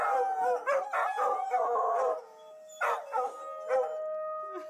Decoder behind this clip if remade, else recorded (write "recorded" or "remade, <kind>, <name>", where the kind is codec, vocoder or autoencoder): recorded